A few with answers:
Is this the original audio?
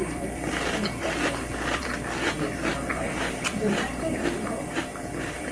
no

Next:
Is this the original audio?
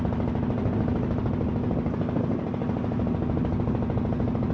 yes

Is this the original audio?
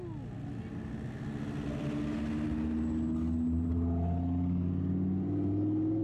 yes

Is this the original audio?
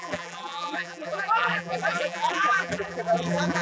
no